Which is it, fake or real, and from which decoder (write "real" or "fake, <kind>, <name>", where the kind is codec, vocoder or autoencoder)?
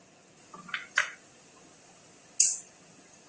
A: real